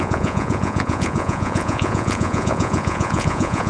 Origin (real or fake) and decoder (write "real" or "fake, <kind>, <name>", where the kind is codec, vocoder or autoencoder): fake, vocoder, Vocos